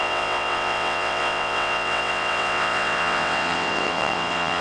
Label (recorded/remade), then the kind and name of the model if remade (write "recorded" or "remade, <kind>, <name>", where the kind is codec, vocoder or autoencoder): remade, vocoder, WaveNeXt